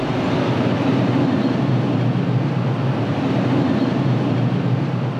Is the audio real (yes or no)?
yes